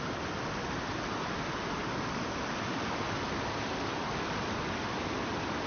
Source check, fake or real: real